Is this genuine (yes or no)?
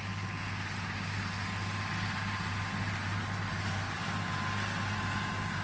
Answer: yes